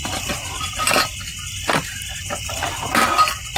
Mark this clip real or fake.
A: real